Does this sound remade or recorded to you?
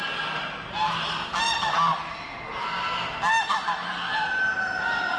recorded